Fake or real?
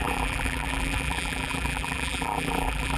fake